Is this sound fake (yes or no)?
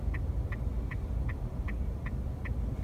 no